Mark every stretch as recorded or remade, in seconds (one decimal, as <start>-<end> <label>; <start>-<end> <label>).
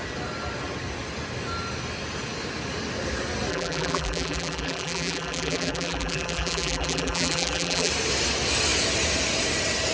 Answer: 0.0-3.5 recorded; 3.5-7.9 remade; 7.9-9.9 recorded